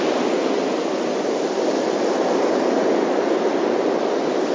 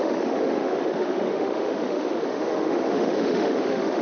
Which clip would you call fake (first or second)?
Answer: second